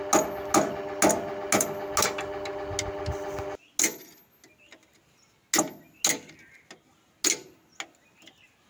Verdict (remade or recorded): recorded